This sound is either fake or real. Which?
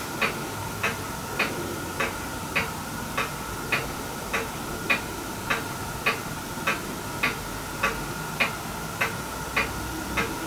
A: real